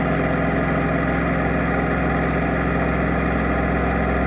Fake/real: real